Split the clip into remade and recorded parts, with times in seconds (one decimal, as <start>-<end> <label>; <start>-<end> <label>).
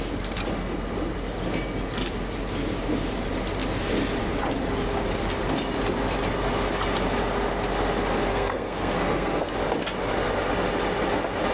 0.0-8.3 recorded; 8.3-9.5 remade; 9.5-11.5 recorded